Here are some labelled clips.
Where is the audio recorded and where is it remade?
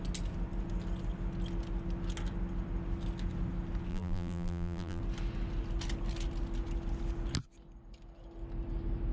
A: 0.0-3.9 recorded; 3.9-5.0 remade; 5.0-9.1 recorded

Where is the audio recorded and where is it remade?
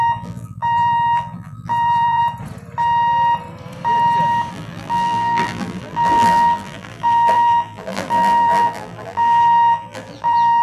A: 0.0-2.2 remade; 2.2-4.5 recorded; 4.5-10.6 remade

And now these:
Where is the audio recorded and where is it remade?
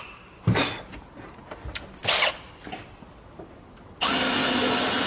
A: 0.0-5.1 recorded